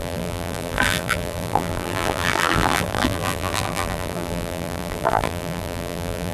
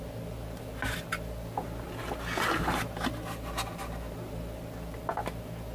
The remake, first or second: first